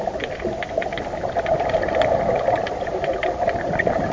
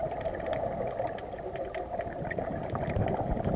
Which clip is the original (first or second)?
second